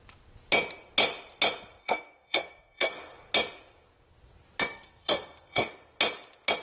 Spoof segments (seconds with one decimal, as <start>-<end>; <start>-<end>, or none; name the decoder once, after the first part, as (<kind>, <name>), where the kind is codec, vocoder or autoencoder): 1.8-2.9 (codec, SNAC); 4.7-5.7

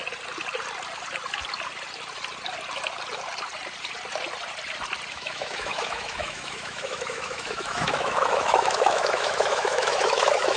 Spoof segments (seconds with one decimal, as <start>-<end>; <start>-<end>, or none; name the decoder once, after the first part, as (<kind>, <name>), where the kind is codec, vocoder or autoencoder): 5.1-10.6 (autoencoder, DAC-VAE)

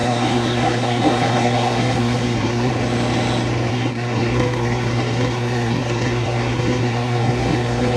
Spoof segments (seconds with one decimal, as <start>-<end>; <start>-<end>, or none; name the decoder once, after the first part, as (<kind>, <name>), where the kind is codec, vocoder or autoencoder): 0.0-2.7 (codec, SNAC); 3.7-8.0

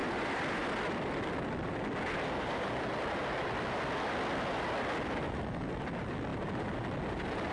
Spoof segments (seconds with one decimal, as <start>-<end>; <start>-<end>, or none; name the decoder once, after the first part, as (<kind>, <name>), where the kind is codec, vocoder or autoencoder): 0.0-2.7 (vocoder, BigVGAN v2)

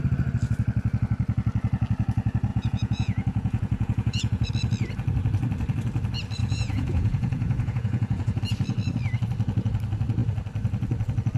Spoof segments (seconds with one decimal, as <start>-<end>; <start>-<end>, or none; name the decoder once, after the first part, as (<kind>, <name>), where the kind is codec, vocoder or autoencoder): 2.5-4.5 (vocoder, Vocos); 6.4-8.4

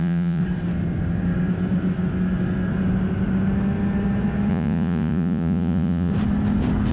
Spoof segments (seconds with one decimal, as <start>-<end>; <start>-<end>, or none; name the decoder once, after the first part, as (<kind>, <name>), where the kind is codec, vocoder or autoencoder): 0.0-0.4 (vocoder, Vocos); 4.5-6.1

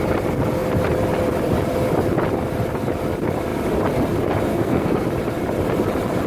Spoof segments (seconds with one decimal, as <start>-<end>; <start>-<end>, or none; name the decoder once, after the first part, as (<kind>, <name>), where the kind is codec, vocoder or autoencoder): 4.5-5.1 (codec, SNAC)

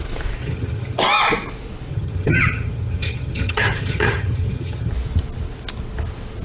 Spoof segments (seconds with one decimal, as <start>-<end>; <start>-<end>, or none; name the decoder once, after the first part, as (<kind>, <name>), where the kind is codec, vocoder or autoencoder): 0.4-1.0 (vocoder, HiFi-GAN); 1.9-4.9